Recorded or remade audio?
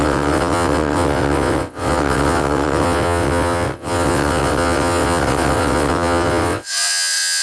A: remade